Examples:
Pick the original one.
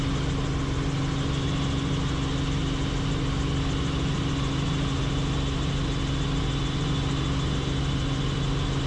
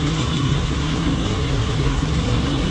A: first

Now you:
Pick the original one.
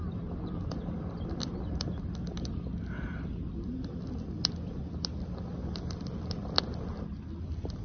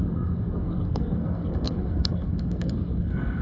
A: first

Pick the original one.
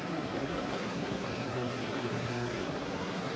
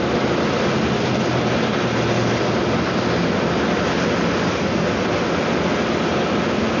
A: second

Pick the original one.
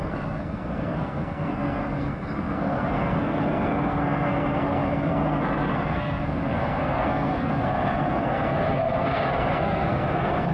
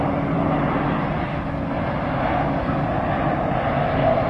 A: second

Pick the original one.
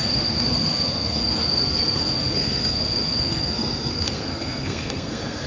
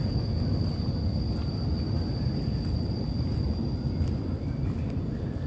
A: second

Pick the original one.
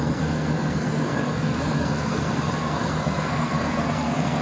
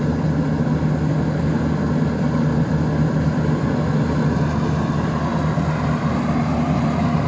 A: second